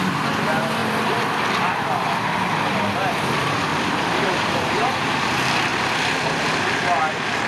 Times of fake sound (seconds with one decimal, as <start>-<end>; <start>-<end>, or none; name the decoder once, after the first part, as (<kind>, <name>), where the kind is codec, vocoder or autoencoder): 3.7-4.9 (vocoder, BigVGAN v2)

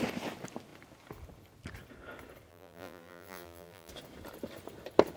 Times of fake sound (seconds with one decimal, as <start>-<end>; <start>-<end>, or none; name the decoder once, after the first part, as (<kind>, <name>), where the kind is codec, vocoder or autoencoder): 2.5-3.9 (vocoder, BigVGAN v2)

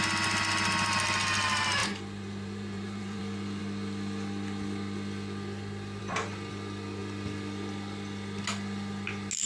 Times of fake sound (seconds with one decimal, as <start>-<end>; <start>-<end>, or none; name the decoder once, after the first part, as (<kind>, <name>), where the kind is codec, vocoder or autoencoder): 1.8-3.2 (vocoder, BigVGAN v2)